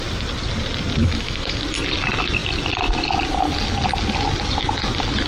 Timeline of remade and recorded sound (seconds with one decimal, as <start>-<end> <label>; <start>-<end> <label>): 0.0-1.0 recorded; 1.0-1.6 remade; 1.6-5.3 recorded